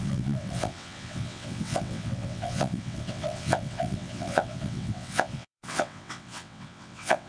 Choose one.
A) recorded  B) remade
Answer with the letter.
B